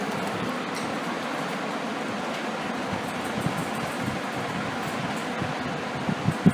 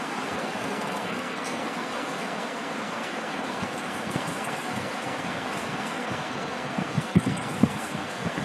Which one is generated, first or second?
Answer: second